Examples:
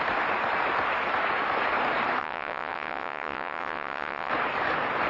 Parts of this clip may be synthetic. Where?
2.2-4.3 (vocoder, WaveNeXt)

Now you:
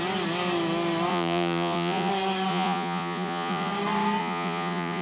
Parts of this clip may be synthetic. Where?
1.1-2.1 (vocoder, Vocos); 2.5-3.7; 4.2-5.0

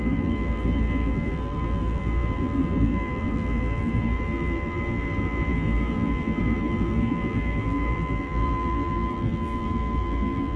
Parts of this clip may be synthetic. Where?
0.0-10.6 (vocoder, BigVGAN v2)